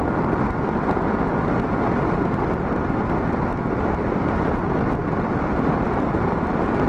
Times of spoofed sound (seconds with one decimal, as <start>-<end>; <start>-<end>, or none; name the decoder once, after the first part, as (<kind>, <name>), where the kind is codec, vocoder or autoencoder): none